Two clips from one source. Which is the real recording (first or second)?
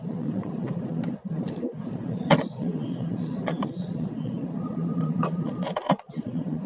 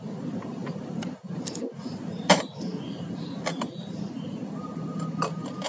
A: second